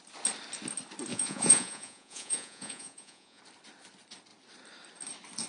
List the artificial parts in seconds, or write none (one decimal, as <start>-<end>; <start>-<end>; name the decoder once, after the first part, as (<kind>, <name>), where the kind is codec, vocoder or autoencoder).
1.1-3.4 (vocoder, Vocos)